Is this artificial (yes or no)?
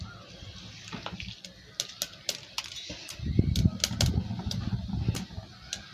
no